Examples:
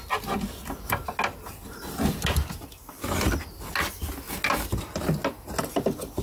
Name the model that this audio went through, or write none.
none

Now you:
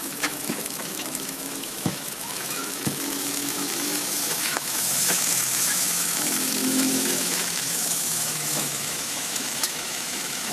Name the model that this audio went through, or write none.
autoencoder, DAC-VAE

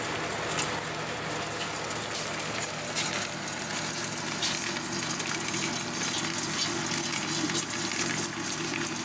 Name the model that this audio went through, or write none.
none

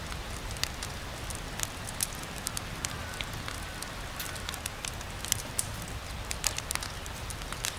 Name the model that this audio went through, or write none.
none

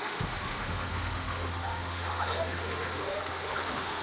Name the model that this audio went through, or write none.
autoencoder, DAC-VAE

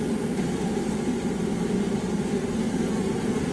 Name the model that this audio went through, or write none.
none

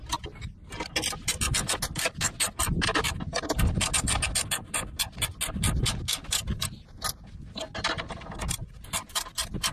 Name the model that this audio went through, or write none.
none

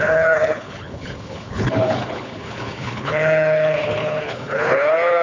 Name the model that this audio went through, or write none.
codec, HILCodec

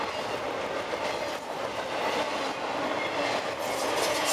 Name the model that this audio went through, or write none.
none